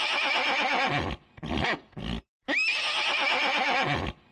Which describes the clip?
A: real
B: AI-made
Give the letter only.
A